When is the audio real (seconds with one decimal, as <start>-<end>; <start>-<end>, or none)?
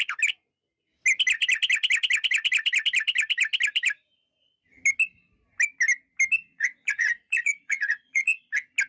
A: 0.0-6.4; 8.4-8.9